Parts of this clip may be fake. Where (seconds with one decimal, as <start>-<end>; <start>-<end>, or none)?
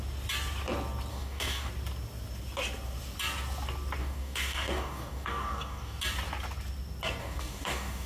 1.1-1.7; 4.0-6.0; 7.2-8.1